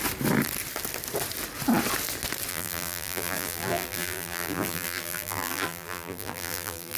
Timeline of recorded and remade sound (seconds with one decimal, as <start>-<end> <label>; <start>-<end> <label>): 0.0-2.5 recorded; 2.5-7.0 remade